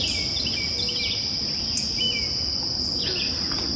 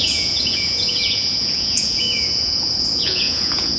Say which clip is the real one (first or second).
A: first